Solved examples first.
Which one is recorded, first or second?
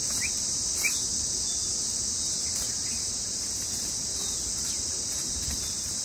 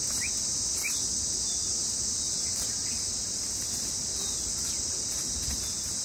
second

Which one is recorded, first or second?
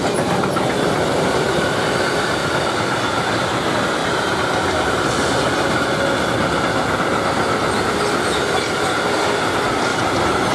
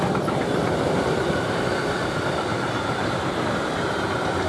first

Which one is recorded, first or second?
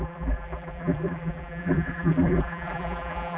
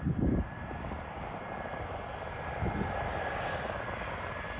second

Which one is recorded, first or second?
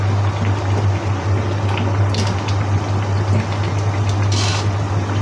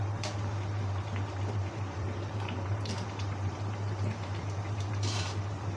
first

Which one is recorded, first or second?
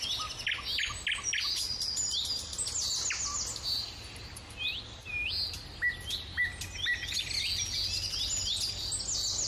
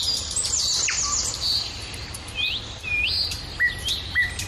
first